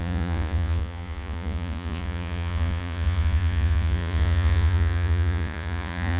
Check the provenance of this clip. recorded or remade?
remade